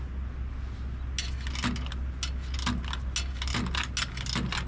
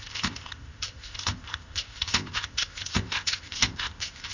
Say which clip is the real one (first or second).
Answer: first